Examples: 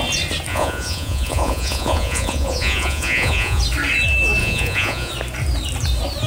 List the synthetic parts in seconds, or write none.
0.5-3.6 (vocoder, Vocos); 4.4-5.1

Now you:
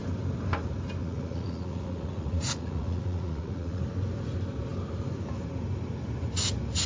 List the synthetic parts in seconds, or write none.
1.0-3.8 (vocoder, Vocos)

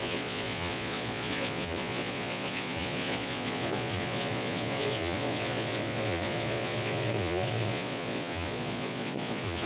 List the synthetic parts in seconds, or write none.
0.0-9.7 (vocoder, Vocos)

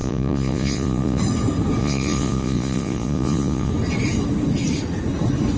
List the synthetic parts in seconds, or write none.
0.0-1.2 (vocoder, Vocos); 1.8-3.7

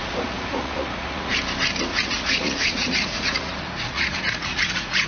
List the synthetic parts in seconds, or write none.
0.0-1.3 (vocoder, Vocos); 1.9-5.1

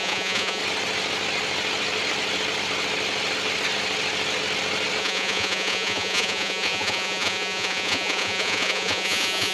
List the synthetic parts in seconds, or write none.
0.0-0.6 (vocoder, Vocos); 5.0-9.5